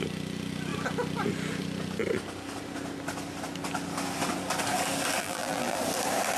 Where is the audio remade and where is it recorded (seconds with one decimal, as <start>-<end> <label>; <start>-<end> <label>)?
0.0-5.2 recorded; 5.2-5.8 remade; 5.8-6.4 recorded

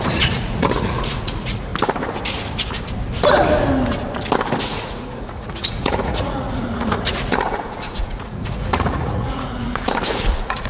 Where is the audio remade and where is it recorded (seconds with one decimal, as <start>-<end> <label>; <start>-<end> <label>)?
0.0-1.7 remade; 1.7-4.6 recorded; 4.6-10.7 remade

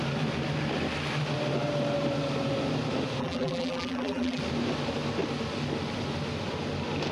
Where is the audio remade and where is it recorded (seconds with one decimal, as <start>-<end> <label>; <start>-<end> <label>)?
0.0-3.2 recorded; 3.2-4.4 remade; 4.4-7.1 recorded

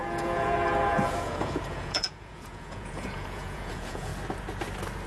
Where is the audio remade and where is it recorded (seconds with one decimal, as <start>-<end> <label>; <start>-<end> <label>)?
0.0-4.1 remade; 4.1-5.1 recorded

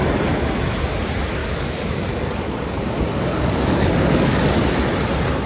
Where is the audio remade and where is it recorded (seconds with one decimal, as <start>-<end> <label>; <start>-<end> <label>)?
0.0-1.4 recorded; 1.4-4.7 remade; 4.7-5.5 recorded

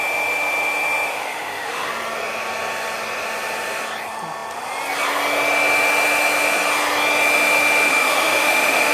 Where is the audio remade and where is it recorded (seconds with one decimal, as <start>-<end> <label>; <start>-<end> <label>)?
0.0-1.1 recorded; 1.1-1.9 remade; 1.9-7.9 recorded; 7.9-8.9 remade